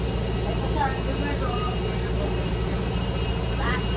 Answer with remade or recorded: recorded